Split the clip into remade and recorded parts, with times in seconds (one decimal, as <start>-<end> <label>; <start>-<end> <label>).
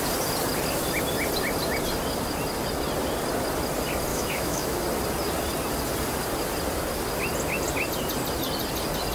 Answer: 0.0-4.1 recorded; 4.1-4.8 remade; 4.8-9.1 recorded